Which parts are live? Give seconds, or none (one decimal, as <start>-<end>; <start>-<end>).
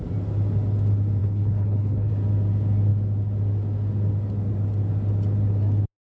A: 0.0-1.2; 2.1-6.1